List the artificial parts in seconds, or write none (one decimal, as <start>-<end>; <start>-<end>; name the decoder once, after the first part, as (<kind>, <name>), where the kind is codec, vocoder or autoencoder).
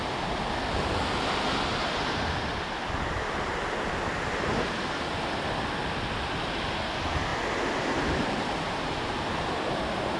none